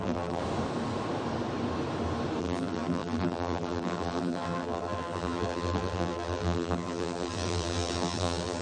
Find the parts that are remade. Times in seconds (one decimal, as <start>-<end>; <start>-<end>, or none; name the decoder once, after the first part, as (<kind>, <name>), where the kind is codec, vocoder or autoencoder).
0.0-0.4 (vocoder, BigVGAN v2); 2.4-8.6